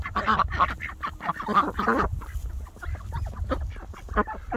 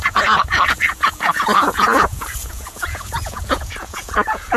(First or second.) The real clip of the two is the first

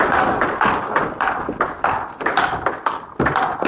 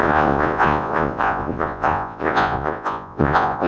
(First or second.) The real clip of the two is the first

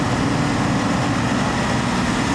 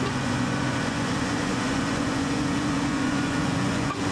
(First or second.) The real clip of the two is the first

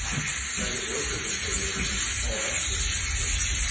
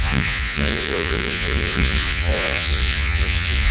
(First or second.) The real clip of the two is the first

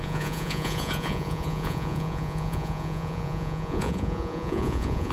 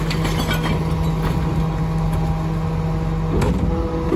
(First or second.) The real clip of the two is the second